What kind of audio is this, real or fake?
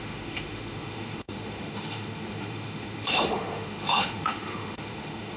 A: fake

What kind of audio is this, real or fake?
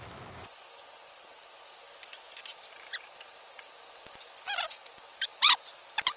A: real